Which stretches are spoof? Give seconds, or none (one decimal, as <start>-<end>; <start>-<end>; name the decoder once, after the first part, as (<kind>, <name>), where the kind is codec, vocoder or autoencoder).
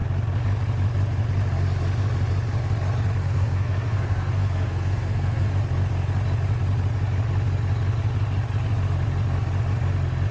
3.2-5.5 (codec, SNAC)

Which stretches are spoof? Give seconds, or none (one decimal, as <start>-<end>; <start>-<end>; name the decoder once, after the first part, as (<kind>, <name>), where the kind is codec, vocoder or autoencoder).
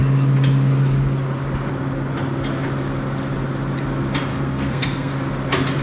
4.3-5.1 (codec, SNAC)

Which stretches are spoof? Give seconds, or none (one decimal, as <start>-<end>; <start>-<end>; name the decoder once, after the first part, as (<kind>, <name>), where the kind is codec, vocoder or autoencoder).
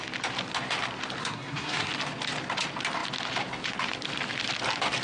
1.2-1.9 (codec, SNAC)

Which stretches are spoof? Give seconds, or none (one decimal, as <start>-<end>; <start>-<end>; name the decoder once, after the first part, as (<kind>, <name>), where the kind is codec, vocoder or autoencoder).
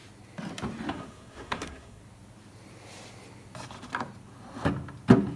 0.9-2.0 (codec, SNAC)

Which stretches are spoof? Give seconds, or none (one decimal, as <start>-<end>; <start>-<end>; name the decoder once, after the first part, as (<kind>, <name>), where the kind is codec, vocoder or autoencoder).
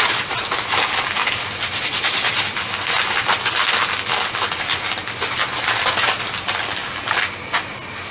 none